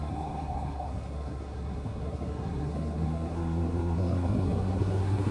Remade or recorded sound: remade